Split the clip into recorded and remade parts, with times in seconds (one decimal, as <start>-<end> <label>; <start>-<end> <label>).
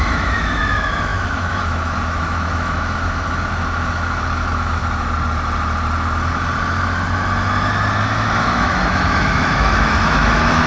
0.0-4.8 remade; 4.8-8.0 recorded; 8.0-10.7 remade